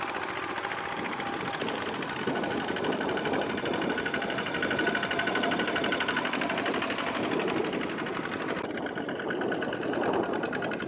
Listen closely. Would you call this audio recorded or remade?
remade